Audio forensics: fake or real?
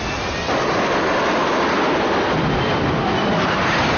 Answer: real